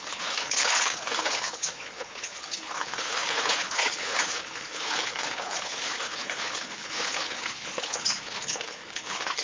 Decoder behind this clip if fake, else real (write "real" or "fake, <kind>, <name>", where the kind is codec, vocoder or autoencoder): fake, codec, HILCodec